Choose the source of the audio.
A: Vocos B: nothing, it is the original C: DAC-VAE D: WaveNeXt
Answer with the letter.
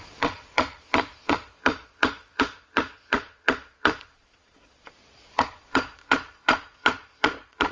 A